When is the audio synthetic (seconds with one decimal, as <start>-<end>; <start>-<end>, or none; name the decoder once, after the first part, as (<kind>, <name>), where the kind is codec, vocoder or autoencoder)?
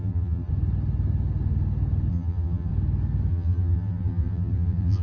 0.0-0.5 (vocoder, BigVGAN v2); 2.1-2.7; 3.3-5.0